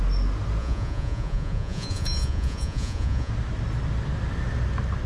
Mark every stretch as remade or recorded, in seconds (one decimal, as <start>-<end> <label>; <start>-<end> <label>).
0.0-0.6 recorded; 0.6-3.3 remade; 3.3-5.1 recorded